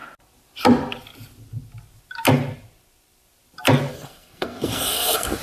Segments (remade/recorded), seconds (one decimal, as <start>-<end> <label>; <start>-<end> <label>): 0.0-3.9 recorded; 3.9-5.4 remade